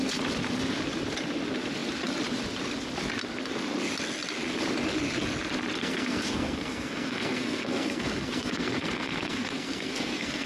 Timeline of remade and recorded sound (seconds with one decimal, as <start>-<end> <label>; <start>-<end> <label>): 0.0-5.8 recorded; 5.8-10.5 remade